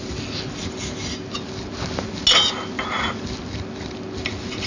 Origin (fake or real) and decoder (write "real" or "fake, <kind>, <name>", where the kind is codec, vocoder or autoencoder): real